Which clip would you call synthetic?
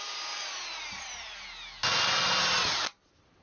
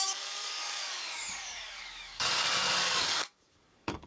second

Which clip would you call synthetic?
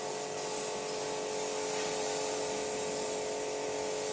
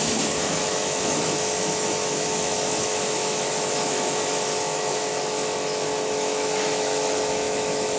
second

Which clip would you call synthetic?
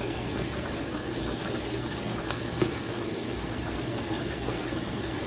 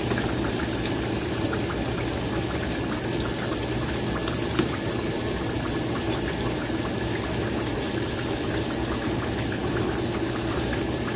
first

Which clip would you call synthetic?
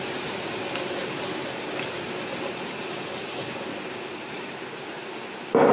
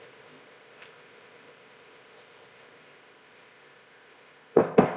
second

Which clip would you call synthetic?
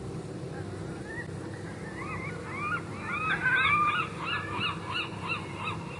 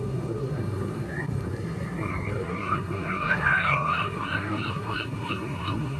second